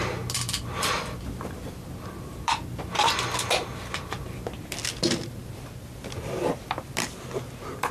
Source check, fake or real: real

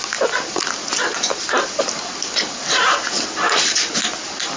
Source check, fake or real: real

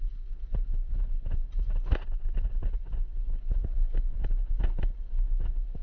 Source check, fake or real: real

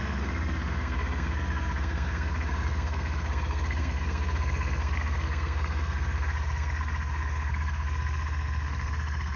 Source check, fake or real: fake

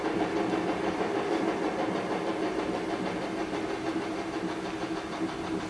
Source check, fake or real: real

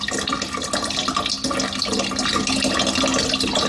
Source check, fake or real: real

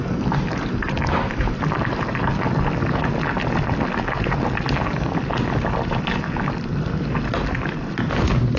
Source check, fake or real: real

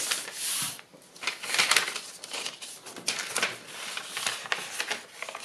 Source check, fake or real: fake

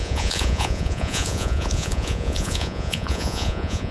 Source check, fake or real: fake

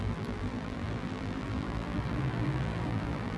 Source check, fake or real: fake